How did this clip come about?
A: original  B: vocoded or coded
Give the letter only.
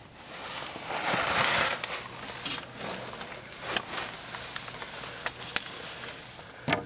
A